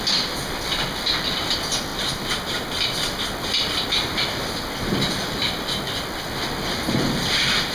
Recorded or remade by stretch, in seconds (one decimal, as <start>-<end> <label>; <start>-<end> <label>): 0.0-7.7 recorded